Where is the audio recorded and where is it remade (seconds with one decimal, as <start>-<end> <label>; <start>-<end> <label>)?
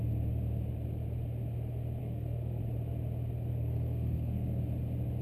0.0-2.0 recorded; 2.0-2.6 remade; 2.6-3.5 recorded; 3.5-4.6 remade; 4.6-5.2 recorded